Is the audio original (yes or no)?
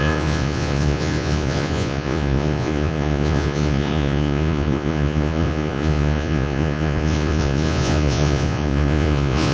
no